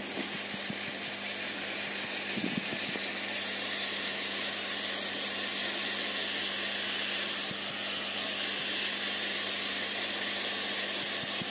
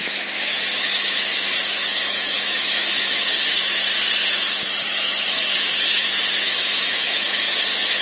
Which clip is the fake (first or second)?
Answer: second